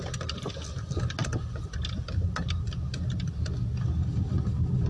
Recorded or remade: recorded